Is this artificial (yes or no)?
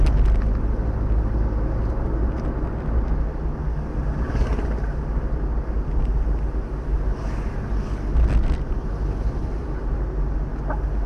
no